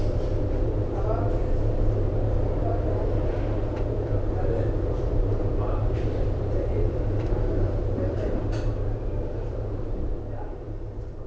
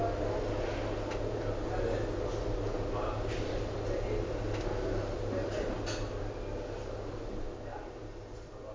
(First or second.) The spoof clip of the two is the first